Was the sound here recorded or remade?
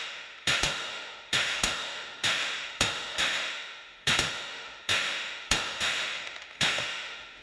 remade